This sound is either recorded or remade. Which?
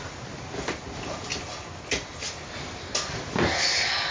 recorded